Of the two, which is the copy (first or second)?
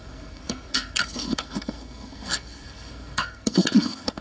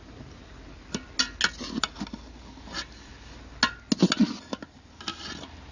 first